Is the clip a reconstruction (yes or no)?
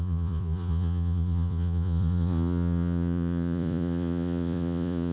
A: yes